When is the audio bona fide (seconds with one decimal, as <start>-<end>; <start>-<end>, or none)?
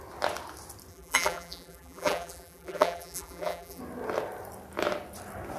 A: 0.0-0.9; 3.8-5.6